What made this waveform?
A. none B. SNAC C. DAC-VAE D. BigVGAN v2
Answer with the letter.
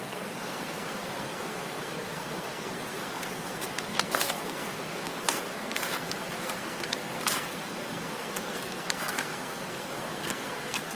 B